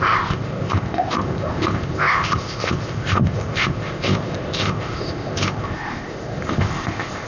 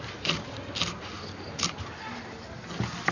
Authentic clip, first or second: second